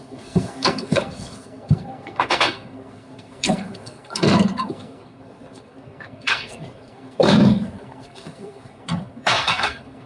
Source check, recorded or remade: remade